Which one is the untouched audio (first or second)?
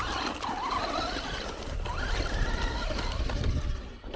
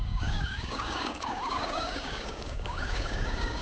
first